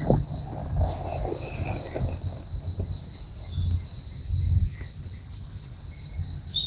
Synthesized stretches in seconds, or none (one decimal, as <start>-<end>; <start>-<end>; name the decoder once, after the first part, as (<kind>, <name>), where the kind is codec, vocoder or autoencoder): 4.6-5.8 (codec, HILCodec)